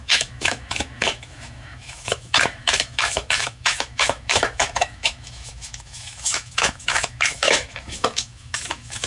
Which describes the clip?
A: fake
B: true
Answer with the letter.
A